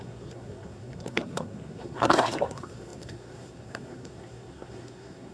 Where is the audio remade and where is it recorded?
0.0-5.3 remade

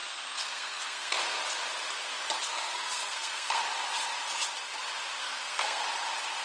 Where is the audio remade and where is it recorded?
0.0-1.1 remade; 1.1-2.5 recorded; 2.5-3.6 remade; 3.6-5.2 recorded; 5.2-5.8 remade; 5.8-6.4 recorded

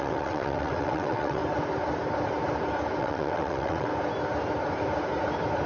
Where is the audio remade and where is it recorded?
0.0-1.4 remade; 1.4-3.0 recorded; 3.0-3.9 remade; 3.9-5.7 recorded